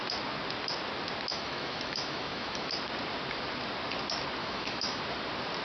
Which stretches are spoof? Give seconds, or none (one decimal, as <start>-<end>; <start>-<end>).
1.3-2.7; 4.4-5.0